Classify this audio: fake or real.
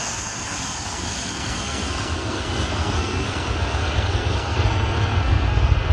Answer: fake